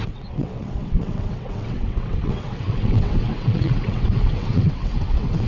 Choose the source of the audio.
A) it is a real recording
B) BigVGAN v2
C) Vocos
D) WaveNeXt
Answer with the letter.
D